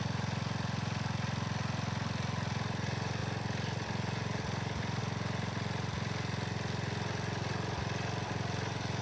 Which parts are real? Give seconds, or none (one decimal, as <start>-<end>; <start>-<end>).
0.0-9.0